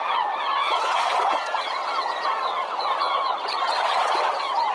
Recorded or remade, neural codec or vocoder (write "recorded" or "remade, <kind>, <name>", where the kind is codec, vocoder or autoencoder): remade, vocoder, WaveNeXt